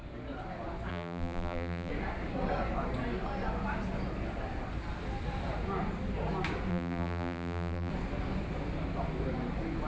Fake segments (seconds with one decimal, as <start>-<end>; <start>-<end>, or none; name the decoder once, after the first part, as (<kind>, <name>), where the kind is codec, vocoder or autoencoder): 0.9-1.9 (vocoder, BigVGAN v2); 6.7-7.9